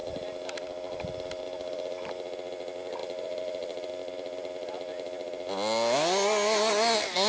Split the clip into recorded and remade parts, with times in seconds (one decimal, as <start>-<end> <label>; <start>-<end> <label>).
0.0-1.4 remade; 1.4-3.0 recorded; 3.0-3.9 remade; 3.9-7.3 recorded